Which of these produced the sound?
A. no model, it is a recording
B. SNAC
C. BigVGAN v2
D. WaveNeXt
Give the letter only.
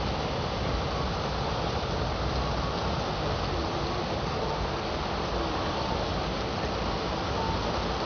A